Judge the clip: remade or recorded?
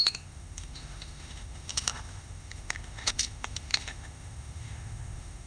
remade